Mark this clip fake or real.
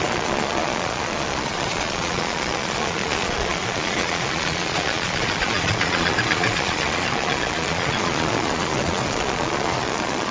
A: fake